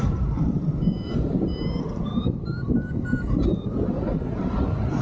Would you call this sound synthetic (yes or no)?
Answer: yes